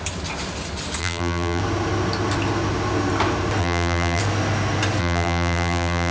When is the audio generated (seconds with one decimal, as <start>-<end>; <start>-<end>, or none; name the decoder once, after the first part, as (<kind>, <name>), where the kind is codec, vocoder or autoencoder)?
1.0-1.6 (vocoder, BigVGAN v2); 3.6-4.2; 5.0-6.1